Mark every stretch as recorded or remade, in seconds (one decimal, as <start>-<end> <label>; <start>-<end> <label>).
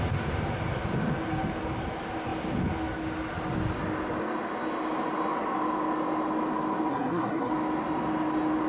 0.0-6.9 recorded; 6.9-7.5 remade; 7.5-8.7 recorded